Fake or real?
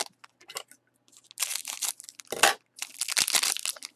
real